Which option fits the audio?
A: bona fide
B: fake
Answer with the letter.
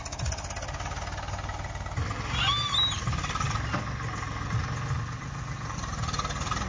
A